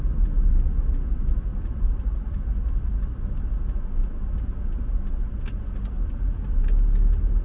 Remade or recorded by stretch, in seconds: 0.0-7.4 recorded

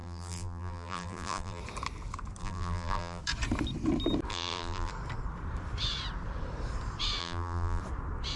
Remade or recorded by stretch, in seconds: 0.0-1.6 remade; 1.6-2.4 recorded; 2.4-3.2 remade; 3.2-4.3 recorded; 4.3-4.9 remade; 4.9-7.2 recorded; 7.2-7.8 remade; 7.8-8.4 recorded

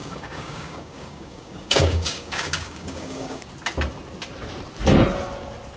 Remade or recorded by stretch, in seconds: 0.0-3.5 remade; 3.5-5.8 recorded

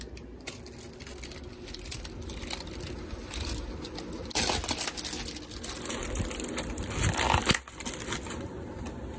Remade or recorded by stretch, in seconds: 0.0-9.2 recorded

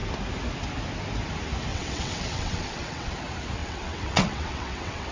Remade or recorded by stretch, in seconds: 0.0-1.7 recorded; 1.7-3.1 remade; 3.1-3.6 recorded; 3.6-5.1 remade